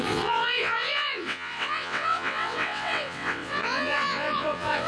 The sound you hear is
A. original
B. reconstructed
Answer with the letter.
B